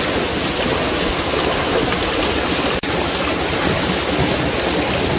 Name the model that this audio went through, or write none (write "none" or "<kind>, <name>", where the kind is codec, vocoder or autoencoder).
none